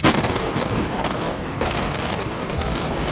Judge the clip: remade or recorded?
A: remade